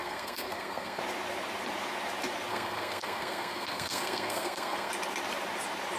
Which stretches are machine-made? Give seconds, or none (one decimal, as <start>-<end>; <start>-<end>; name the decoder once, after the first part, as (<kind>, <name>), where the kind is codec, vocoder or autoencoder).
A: 0.0-1.0 (codec, SNAC); 2.5-4.9